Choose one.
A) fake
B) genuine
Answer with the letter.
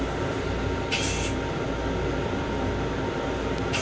B